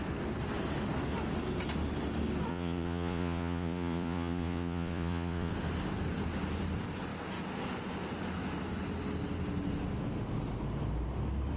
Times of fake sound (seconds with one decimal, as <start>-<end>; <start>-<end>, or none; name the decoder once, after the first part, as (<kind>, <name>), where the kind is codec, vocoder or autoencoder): 2.5-5.5 (vocoder, Vocos)